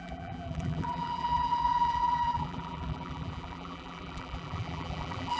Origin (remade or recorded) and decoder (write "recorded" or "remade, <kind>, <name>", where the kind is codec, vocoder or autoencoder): remade, vocoder, BigVGAN v2